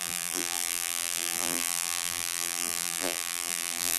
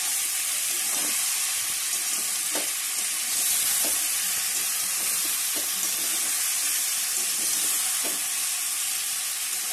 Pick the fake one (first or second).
first